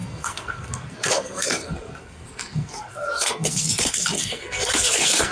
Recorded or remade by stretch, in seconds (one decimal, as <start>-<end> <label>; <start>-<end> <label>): 0.0-5.3 remade